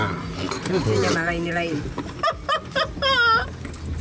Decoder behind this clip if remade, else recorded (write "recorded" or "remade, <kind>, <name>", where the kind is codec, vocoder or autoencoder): recorded